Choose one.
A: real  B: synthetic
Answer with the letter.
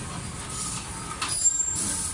A